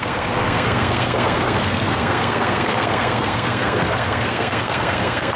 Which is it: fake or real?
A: fake